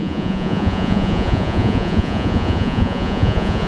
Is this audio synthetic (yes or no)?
yes